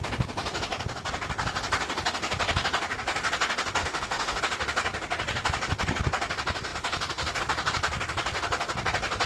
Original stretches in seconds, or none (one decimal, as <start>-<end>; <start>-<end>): 0.0-3.8; 4.4-9.3